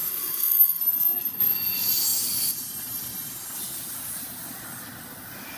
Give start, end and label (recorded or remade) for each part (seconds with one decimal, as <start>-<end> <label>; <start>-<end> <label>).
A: 0.0-0.8 remade; 0.8-5.6 recorded